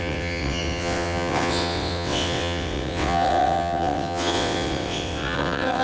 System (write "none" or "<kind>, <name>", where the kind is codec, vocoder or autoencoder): vocoder, WaveNeXt